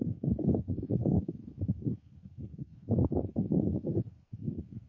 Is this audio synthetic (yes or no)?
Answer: yes